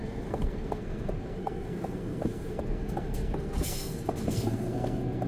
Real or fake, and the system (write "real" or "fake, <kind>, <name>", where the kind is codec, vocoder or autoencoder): fake, codec, SNAC